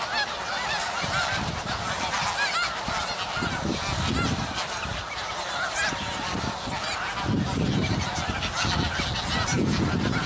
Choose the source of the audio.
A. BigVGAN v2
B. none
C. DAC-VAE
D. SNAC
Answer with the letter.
B